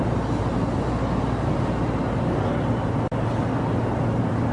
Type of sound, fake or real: real